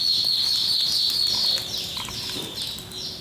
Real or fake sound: real